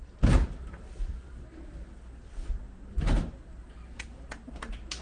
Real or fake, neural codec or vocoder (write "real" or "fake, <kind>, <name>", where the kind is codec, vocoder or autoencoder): real